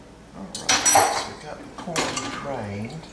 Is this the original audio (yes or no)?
yes